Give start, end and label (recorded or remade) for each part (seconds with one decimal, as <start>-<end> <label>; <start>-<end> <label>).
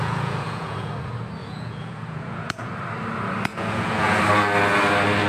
0.0-0.9 remade; 0.9-1.4 recorded; 1.4-2.7 remade; 2.7-3.5 recorded; 3.5-4.2 remade; 4.2-5.3 recorded